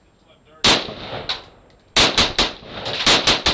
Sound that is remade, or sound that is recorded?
recorded